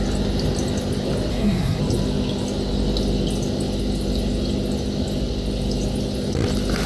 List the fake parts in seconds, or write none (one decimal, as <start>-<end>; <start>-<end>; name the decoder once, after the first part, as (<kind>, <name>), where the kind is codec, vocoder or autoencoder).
1.3-1.8 (codec, SNAC)